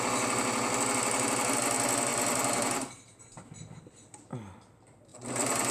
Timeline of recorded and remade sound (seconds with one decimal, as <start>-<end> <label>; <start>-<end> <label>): 0.0-5.7 recorded